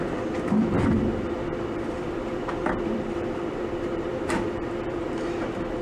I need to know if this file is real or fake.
fake